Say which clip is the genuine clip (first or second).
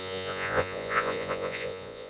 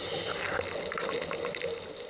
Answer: second